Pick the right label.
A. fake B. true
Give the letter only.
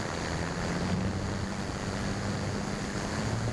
B